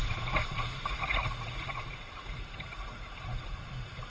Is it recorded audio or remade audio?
remade